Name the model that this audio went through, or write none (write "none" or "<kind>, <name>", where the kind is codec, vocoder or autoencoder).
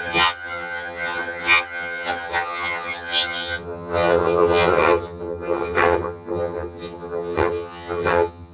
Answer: vocoder, HiFi-GAN